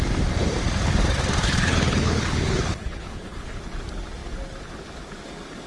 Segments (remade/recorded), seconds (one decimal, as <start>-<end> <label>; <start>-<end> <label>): 0.0-1.4 recorded; 1.4-3.6 remade; 3.6-5.7 recorded